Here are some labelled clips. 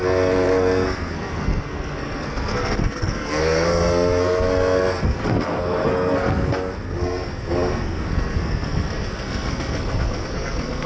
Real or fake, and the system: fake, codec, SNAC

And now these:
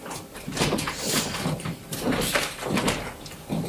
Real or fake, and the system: real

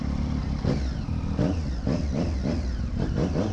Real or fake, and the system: real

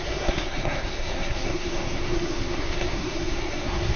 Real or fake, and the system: fake, codec, SNAC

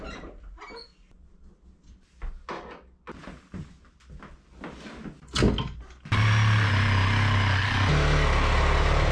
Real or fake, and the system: real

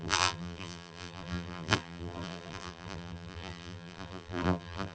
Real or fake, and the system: fake, vocoder, BigVGAN v2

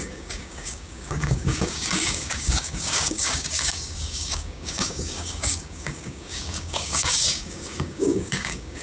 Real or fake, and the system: fake, codec, DAC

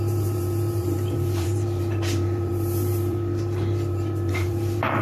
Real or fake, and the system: fake, vocoder, BigVGAN v2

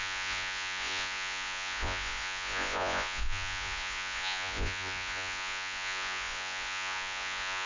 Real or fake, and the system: fake, vocoder, Vocos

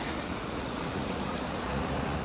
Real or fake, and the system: fake, vocoder, Vocos